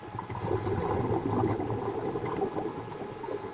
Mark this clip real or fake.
real